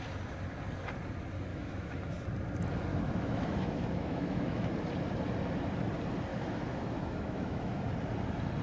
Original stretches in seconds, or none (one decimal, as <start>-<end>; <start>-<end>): 0.0-1.5; 2.1-2.9; 4.7-6.3; 7.8-8.6